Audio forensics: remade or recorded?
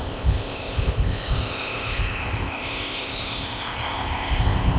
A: remade